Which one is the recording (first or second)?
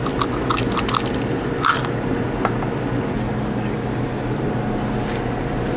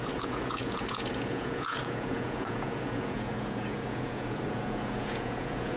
first